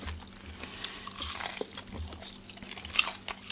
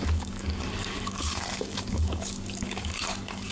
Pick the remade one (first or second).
second